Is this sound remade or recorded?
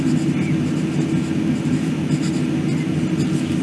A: recorded